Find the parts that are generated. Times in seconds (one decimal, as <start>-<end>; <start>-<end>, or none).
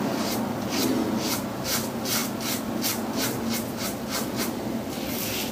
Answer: none